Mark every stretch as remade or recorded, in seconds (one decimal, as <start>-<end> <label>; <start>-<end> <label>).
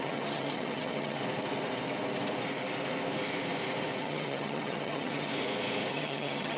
0.0-1.2 remade; 1.2-4.0 recorded; 4.0-5.3 remade; 5.3-5.9 recorded; 5.9-6.6 remade